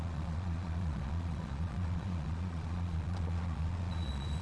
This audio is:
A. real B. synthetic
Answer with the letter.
B